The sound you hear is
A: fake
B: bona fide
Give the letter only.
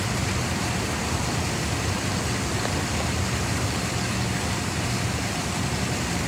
B